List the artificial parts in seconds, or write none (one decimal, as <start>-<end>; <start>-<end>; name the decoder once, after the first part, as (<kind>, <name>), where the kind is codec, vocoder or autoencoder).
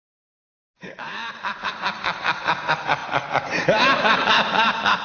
0.0-1.7 (vocoder, BigVGAN v2); 3.0-5.0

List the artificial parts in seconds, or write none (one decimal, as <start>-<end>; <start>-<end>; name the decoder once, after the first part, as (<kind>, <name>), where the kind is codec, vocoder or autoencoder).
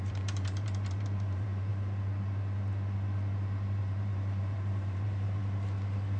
0.0-1.7 (vocoder, BigVGAN v2); 3.8-5.4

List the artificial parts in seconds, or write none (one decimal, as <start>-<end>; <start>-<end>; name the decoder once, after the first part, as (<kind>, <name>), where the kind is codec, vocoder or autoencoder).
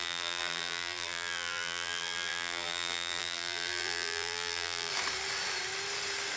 0.0-4.9 (vocoder, BigVGAN v2)